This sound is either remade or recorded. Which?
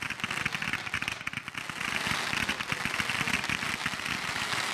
recorded